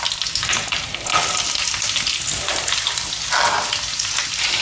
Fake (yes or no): no